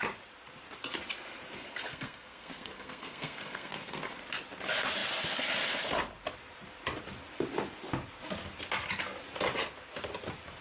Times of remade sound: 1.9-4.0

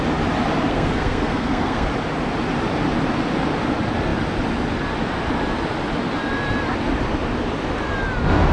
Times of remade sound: 0.7-1.9

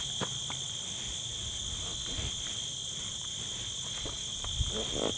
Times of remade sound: none

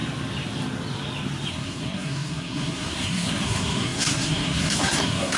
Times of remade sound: 1.5-5.4

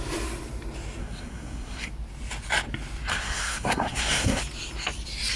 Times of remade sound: 1.0-1.9; 3.1-4.4

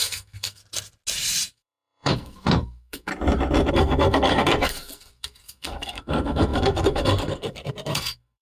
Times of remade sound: 0.0-0.6; 1.5-3.1; 3.7-8.4

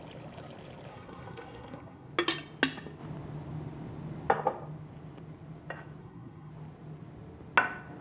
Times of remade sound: 0.9-2.1; 6.0-6.5